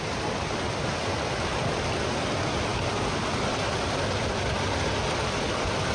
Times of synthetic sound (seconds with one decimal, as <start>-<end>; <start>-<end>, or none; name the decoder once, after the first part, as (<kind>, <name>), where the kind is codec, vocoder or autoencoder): none